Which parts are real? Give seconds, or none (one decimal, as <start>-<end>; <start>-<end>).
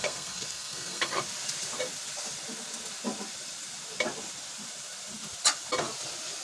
1.2-6.4